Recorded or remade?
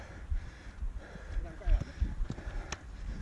recorded